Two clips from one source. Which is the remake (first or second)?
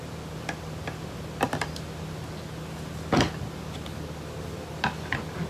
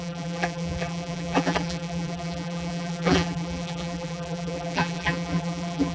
second